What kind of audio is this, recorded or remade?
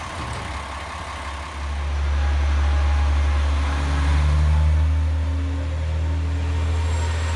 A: recorded